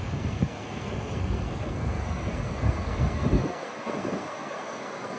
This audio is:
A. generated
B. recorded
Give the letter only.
A